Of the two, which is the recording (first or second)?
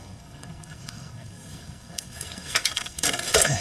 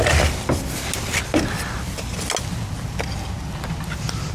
second